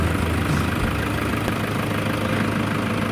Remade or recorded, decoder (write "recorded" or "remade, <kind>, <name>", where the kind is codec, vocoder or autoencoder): recorded